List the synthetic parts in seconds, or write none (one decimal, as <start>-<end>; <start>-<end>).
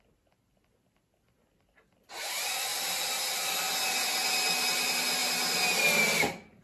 none